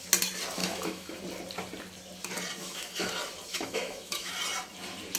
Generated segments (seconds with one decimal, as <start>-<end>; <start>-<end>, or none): 0.6-1.2; 2.6-3.1; 3.5-4.3